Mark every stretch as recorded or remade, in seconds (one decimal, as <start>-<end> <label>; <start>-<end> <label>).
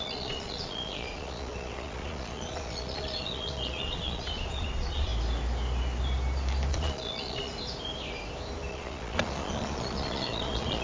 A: 0.0-5.1 remade; 5.1-6.7 recorded; 6.7-7.5 remade; 7.5-8.7 recorded; 8.7-10.8 remade